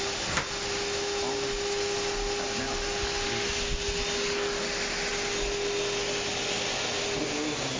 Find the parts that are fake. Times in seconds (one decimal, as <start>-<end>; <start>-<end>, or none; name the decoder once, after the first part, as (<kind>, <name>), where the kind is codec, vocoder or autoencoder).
none